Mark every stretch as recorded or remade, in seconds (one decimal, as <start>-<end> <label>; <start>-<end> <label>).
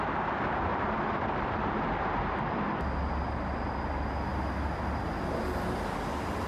0.0-6.5 recorded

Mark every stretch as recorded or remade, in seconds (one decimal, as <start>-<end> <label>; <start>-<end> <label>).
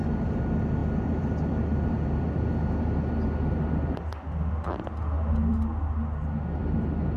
0.0-0.8 recorded; 0.8-1.5 remade; 1.5-7.2 recorded